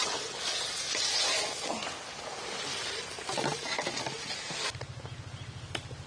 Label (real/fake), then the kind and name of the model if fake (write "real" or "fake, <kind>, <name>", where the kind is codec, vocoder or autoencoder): real